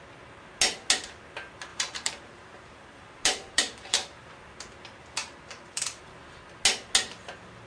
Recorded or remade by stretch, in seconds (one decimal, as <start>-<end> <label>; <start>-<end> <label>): 0.0-1.7 recorded; 1.7-4.3 remade; 4.3-5.2 recorded; 5.2-6.0 remade; 6.0-7.7 recorded